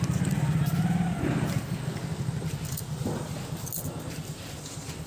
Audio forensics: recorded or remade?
recorded